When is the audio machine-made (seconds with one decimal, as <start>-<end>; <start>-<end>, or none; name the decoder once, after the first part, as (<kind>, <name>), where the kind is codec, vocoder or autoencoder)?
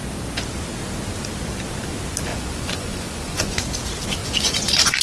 2.3-3.6 (vocoder, Vocos); 4.2-5.0